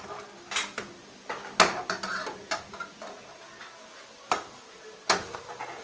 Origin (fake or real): real